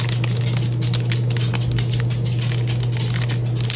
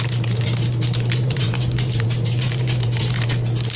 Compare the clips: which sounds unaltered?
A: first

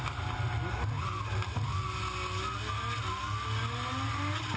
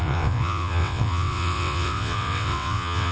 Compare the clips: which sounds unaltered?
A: first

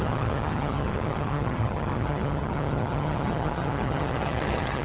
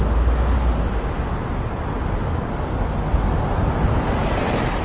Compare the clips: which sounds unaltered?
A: second